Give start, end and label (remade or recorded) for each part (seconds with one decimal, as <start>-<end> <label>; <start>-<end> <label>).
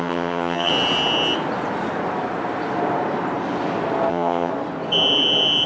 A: 0.0-0.7 remade; 0.7-4.1 recorded; 4.1-4.5 remade; 4.5-5.7 recorded